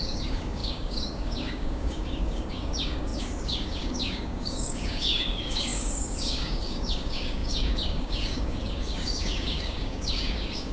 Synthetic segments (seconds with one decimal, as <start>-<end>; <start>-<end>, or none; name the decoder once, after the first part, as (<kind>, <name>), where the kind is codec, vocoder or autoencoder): 0.0-10.7 (codec, DAC)